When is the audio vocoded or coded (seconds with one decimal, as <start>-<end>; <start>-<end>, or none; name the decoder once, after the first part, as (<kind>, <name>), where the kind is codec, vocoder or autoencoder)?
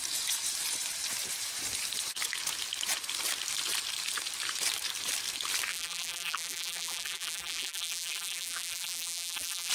5.7-9.7 (vocoder, BigVGAN v2)